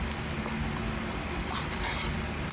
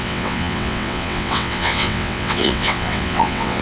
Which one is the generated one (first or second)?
second